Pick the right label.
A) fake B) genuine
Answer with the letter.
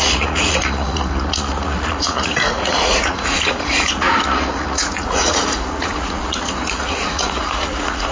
A